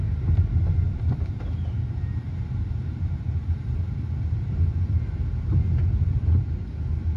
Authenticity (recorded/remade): recorded